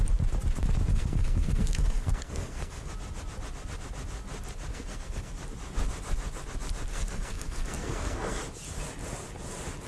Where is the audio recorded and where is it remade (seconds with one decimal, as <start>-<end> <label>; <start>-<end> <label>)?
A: 0.0-0.9 recorded; 0.9-2.9 remade; 2.9-4.7 recorded; 4.7-5.3 remade; 5.3-6.9 recorded; 6.9-8.4 remade; 8.4-9.9 recorded